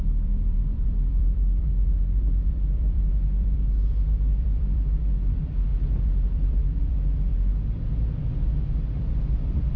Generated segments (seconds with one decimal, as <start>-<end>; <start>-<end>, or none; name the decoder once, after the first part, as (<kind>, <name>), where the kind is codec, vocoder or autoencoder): 0.0-7.3 (vocoder, BigVGAN v2); 9.1-9.8